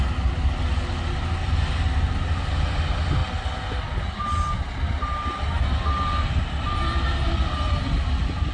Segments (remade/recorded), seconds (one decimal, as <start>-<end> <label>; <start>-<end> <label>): 0.0-8.5 recorded